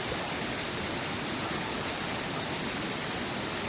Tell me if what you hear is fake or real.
real